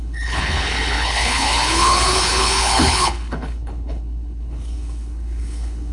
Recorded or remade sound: remade